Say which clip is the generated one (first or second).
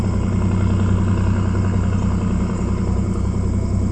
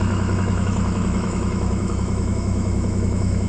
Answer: second